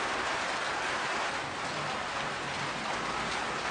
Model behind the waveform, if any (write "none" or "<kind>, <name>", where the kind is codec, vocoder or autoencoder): vocoder, BigVGAN v2